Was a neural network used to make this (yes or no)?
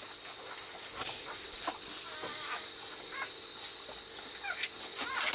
no